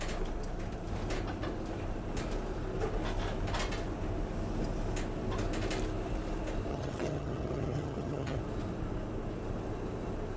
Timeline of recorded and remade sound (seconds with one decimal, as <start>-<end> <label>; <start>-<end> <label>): 0.0-6.7 recorded; 6.7-8.4 remade; 8.4-10.4 recorded